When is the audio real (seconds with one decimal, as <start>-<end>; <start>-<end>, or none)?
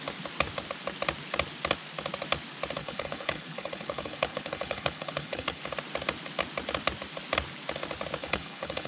0.0-2.8; 5.6-8.2